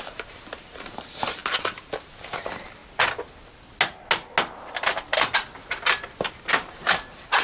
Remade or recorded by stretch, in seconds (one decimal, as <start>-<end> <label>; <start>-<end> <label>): 0.0-2.8 remade; 2.8-6.7 recorded; 6.7-7.4 remade